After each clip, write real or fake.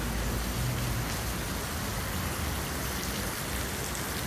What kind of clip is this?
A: real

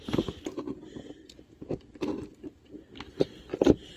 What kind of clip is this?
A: real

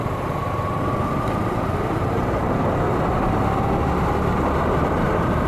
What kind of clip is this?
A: real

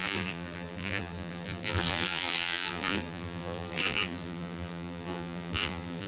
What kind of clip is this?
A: fake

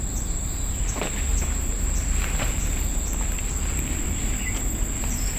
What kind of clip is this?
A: fake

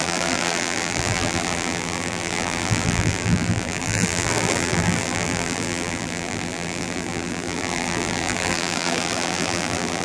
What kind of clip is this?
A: fake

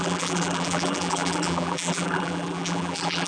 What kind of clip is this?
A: fake